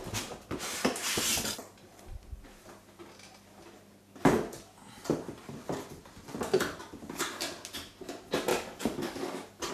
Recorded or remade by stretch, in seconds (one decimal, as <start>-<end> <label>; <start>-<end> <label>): 0.0-8.5 recorded; 8.5-9.7 remade